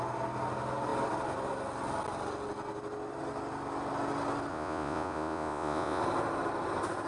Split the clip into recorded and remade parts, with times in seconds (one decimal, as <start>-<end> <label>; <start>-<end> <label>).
0.0-4.5 recorded; 4.5-6.0 remade; 6.0-7.1 recorded